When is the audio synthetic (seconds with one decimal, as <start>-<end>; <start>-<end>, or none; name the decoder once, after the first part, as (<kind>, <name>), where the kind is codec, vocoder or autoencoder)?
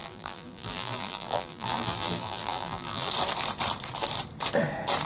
0.0-3.1 (vocoder, BigVGAN v2)